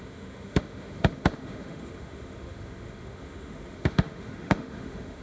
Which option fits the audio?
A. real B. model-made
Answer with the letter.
B